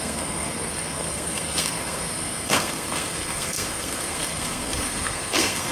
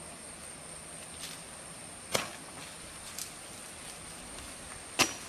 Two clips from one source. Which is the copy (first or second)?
first